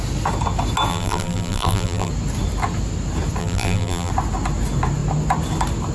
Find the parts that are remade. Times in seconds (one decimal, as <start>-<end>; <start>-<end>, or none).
0.9-2.1; 3.4-4.1